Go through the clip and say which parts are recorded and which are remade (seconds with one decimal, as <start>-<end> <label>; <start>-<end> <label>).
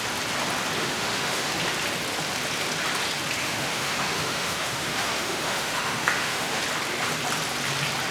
0.0-0.8 recorded; 0.8-1.5 remade; 1.5-3.4 recorded; 3.4-6.6 remade; 6.6-8.1 recorded